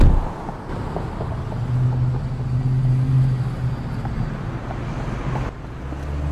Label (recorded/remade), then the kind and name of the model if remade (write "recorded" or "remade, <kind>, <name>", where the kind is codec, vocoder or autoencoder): recorded